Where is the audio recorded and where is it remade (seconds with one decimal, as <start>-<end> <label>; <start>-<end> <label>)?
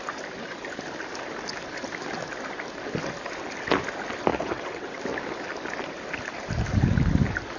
0.0-4.3 recorded; 4.3-5.0 remade; 5.0-7.6 recorded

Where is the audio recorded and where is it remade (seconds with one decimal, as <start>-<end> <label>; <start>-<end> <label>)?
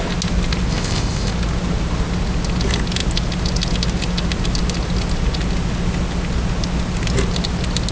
0.0-0.7 recorded; 0.7-1.3 remade; 1.3-7.9 recorded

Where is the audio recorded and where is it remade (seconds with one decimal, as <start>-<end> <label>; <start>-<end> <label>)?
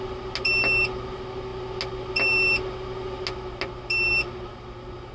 0.0-5.1 recorded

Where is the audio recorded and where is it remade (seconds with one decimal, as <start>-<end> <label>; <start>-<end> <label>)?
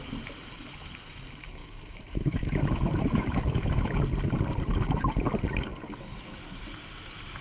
0.0-1.6 recorded; 1.6-3.9 remade; 3.9-7.4 recorded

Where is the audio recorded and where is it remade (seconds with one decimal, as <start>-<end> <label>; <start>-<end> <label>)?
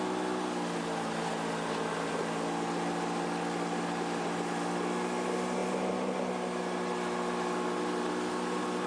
0.0-8.9 recorded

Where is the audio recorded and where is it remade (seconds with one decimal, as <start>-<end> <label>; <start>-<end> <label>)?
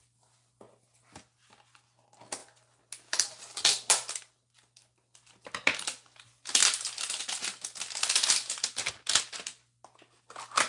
0.0-10.7 recorded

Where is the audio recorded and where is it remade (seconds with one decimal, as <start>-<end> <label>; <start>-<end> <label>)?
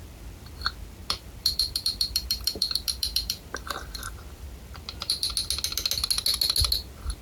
0.0-1.0 recorded; 1.0-5.3 remade; 5.3-7.2 recorded